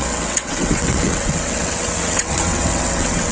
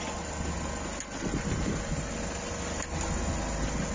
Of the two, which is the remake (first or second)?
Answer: first